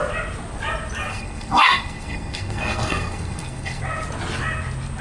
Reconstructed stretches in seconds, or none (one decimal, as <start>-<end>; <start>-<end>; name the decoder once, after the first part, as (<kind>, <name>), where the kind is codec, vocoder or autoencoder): 1.1-3.8 (codec, SNAC)